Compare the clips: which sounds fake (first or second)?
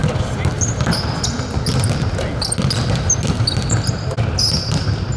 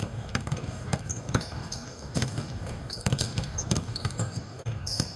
second